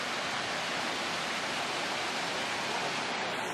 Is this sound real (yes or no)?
yes